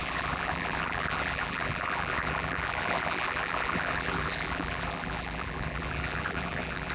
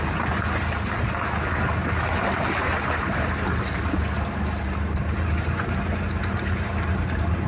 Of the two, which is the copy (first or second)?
first